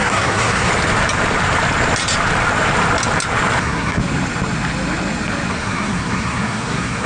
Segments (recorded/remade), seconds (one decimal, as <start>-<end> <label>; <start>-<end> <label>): 0.0-0.7 remade; 0.7-3.6 recorded; 3.6-4.0 remade; 4.0-5.5 recorded; 5.5-7.1 remade